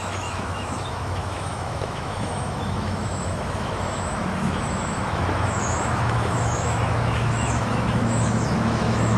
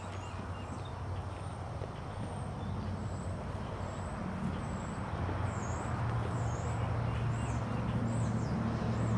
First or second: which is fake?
first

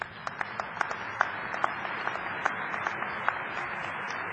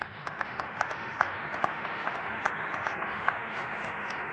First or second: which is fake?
second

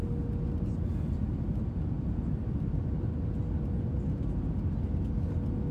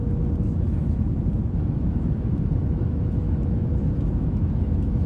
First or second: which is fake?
second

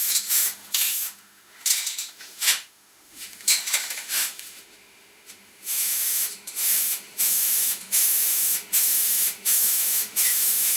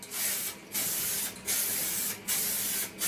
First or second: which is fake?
first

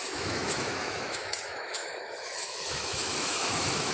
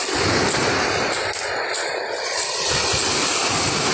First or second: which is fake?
first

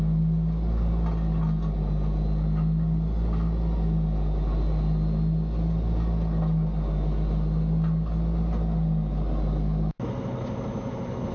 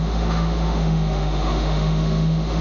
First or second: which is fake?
second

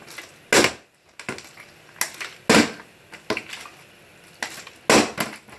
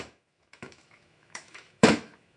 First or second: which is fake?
second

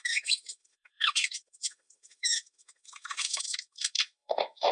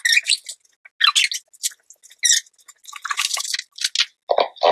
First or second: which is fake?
first